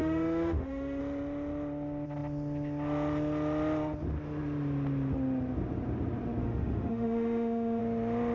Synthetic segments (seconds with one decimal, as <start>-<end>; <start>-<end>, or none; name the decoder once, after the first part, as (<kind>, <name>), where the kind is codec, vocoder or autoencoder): 0.0-1.0 (autoencoder, DAC-VAE); 6.4-7.8